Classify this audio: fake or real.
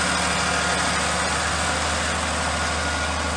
real